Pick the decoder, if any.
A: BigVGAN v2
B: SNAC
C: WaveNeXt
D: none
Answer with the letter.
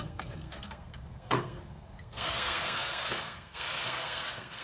B